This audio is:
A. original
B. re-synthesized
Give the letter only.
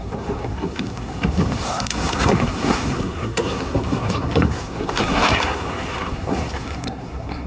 B